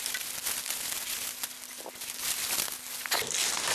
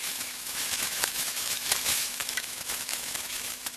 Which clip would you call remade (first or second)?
second